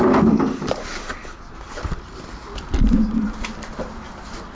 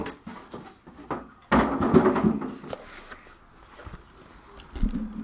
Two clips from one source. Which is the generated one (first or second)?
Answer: first